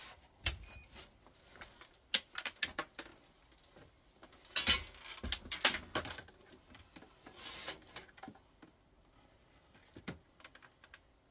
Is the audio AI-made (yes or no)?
no